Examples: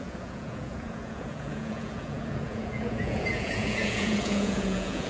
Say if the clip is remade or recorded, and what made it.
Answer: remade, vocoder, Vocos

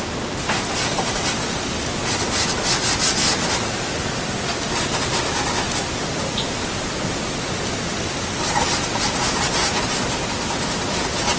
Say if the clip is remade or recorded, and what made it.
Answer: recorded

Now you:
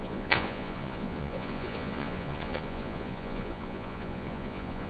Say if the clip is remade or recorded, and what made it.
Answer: remade, vocoder, Vocos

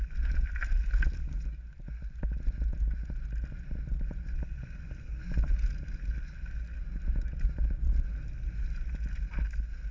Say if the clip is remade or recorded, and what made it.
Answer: recorded